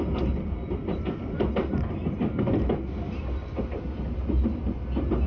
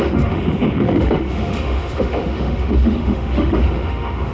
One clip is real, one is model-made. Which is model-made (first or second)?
second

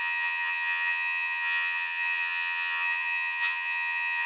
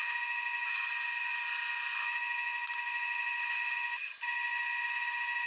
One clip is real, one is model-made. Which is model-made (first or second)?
first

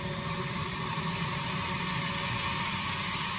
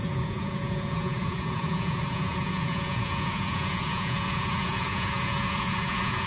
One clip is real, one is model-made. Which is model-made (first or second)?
second